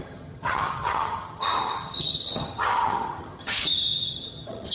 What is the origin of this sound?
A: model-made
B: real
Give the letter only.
A